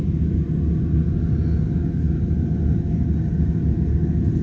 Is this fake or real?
real